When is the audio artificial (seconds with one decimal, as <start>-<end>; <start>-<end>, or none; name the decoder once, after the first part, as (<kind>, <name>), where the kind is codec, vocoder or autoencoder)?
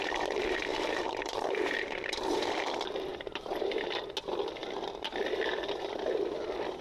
0.7-2.4 (vocoder, BigVGAN v2); 3.1-3.7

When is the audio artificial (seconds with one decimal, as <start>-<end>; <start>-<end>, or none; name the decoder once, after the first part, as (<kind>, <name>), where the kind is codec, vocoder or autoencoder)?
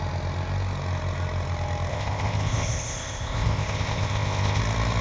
1.9-4.6 (codec, ZipCodec)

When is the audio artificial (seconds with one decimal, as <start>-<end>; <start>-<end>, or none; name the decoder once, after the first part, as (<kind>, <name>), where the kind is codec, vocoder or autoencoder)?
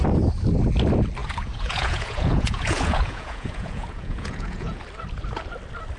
1.2-4.8 (vocoder, Vocos)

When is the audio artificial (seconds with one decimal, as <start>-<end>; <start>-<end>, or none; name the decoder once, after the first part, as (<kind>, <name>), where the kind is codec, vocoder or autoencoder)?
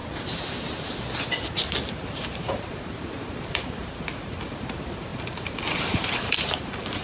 1.9-7.0 (vocoder, BigVGAN v2)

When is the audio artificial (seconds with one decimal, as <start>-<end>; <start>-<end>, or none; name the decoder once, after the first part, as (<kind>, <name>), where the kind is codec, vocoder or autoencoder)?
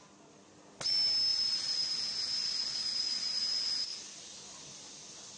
1.3-2.0 (vocoder, BigVGAN v2); 2.4-4.9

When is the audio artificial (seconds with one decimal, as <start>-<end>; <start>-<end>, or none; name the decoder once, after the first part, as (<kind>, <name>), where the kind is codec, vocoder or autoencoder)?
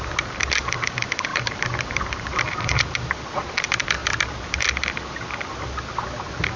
1.3-2.8 (vocoder, BigVGAN v2)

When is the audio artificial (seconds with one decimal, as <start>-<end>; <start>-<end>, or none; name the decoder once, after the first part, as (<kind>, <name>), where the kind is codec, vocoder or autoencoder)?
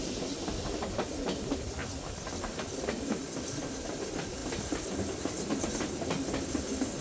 0.0-4.4 (vocoder, BigVGAN v2); 5.6-7.0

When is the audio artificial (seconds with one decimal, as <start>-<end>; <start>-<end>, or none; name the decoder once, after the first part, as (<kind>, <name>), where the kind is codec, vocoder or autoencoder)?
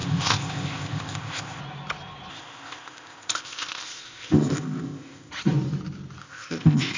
0.0-1.6 (codec, ZipCodec); 2.3-5.3; 6.2-7.0